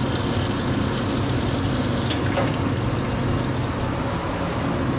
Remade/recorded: recorded